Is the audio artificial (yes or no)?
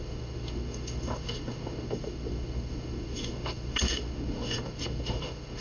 yes